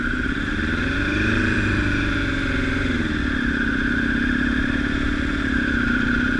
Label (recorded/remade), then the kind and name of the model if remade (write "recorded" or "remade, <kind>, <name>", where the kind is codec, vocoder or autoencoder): remade, vocoder, BigVGAN v2